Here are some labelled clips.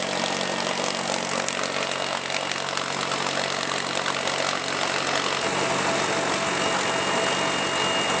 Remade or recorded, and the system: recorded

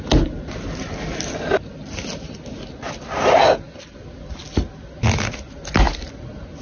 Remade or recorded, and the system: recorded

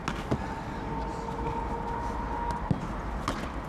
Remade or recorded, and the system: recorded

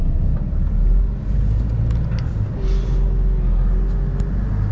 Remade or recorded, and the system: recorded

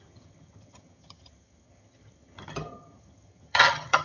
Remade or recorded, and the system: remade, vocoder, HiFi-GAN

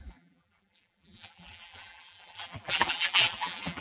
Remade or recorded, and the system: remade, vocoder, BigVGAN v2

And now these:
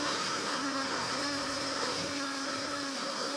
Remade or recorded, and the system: remade, codec, SNAC